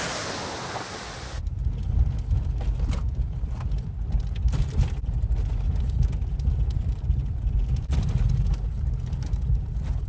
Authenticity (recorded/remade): recorded